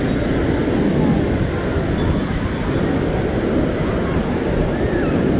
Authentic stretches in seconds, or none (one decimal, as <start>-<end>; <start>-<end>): 0.0-2.2